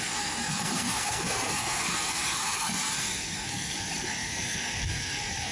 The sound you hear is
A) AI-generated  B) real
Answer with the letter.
A